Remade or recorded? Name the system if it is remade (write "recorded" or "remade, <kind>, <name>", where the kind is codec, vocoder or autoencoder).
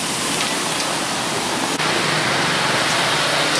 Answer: recorded